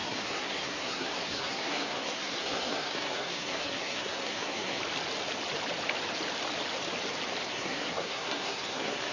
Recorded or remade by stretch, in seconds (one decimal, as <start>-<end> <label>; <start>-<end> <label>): 0.0-4.8 remade; 4.8-7.5 recorded; 7.5-9.1 remade